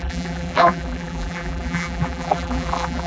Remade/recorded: remade